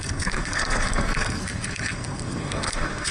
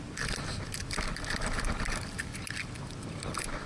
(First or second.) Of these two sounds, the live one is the second